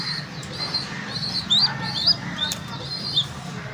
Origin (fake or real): real